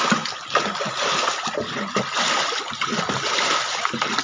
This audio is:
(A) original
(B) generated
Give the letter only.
A